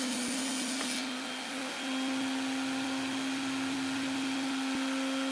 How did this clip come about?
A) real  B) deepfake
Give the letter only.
A